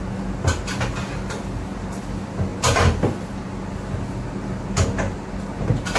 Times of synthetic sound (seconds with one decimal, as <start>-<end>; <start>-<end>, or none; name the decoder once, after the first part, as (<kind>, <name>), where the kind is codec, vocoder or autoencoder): none